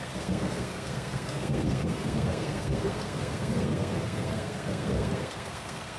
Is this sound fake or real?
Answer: fake